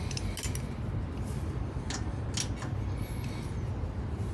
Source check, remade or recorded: recorded